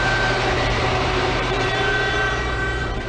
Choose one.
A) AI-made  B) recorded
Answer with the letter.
A